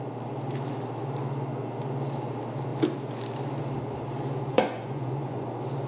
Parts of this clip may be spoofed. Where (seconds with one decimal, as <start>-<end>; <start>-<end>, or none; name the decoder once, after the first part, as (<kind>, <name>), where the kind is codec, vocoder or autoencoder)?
4.5-5.5 (vocoder, Vocos)